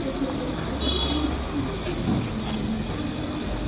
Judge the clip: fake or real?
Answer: real